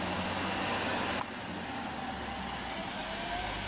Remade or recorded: recorded